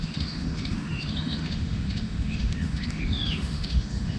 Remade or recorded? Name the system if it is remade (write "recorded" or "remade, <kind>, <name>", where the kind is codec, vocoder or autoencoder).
remade, autoencoder, DAC-VAE